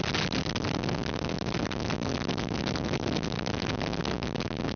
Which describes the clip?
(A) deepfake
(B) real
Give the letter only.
B